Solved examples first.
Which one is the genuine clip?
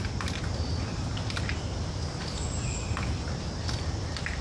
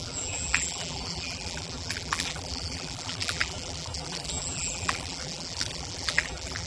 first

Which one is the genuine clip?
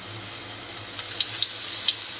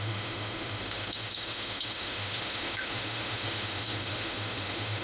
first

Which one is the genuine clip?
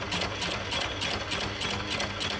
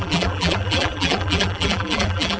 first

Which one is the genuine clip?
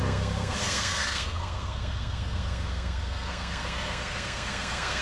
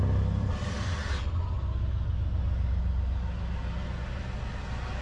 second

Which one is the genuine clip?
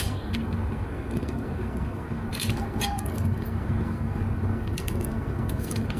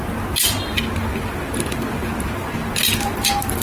second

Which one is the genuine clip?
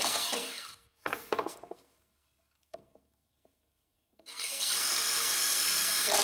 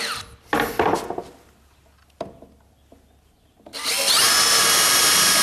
second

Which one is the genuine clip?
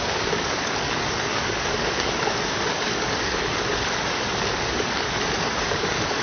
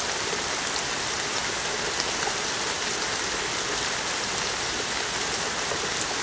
second